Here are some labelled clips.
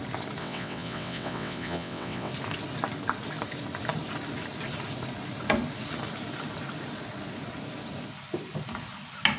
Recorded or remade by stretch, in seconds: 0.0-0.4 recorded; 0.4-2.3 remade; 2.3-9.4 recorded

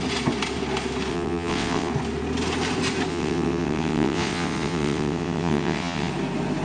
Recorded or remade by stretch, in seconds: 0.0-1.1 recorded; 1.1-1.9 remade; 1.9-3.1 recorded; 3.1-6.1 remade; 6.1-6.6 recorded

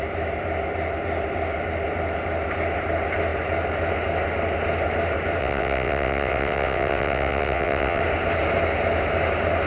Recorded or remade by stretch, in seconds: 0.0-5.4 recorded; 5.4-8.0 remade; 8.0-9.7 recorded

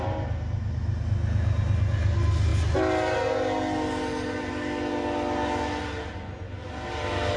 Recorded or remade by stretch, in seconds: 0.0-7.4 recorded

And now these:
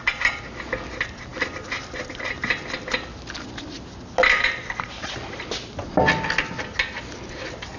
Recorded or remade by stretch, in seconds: 0.0-7.8 recorded

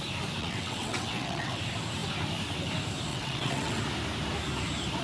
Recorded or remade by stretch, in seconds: 0.0-0.4 recorded; 0.4-1.6 remade; 1.6-3.1 recorded; 3.1-3.8 remade; 3.8-5.0 recorded

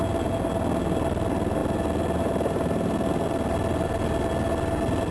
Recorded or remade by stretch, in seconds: 0.0-5.1 recorded